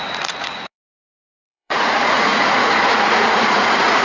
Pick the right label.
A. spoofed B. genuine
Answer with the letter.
A